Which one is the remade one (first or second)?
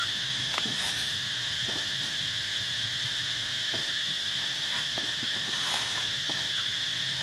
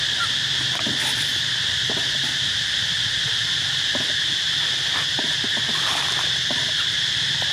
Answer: first